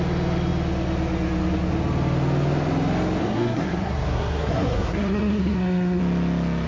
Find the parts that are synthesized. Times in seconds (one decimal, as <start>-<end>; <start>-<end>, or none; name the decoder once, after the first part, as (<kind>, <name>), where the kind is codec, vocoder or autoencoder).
3.2-6.0 (codec, SNAC)